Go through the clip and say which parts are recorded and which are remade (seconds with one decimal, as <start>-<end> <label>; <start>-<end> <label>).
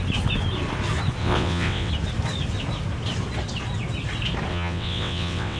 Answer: 0.0-1.2 recorded; 1.2-1.9 remade; 1.9-4.5 recorded; 4.5-5.6 remade